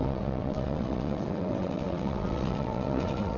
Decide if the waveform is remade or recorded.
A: remade